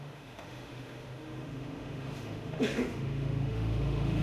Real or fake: fake